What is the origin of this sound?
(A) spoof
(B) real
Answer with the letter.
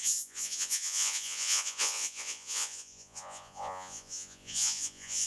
A